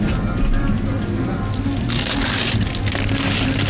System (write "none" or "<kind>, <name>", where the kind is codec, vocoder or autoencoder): none